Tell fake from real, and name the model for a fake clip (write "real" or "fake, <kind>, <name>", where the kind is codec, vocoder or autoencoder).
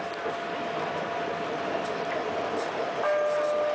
real